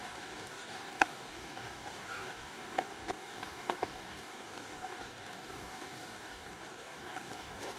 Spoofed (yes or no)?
yes